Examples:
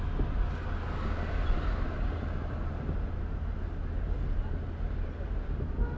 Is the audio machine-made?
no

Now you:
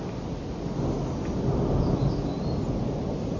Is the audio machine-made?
no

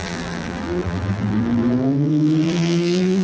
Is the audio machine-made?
yes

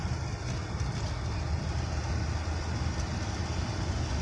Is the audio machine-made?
no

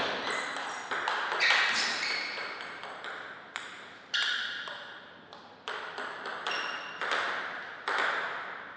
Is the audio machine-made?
no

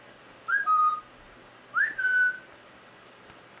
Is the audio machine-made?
no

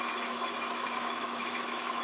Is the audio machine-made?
yes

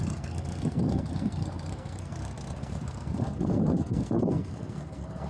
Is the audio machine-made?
yes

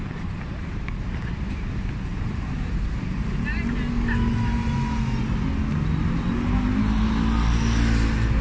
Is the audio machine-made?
no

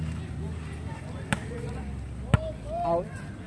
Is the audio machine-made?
no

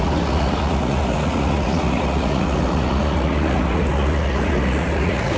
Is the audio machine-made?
yes